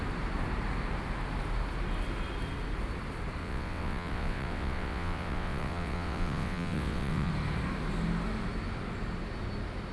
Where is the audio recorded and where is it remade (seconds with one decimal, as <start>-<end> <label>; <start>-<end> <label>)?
0.0-3.4 recorded; 3.4-7.3 remade; 7.3-9.9 recorded